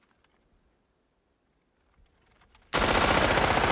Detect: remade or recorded recorded